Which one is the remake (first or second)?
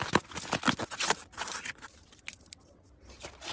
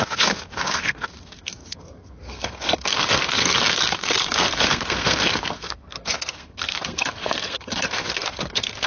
second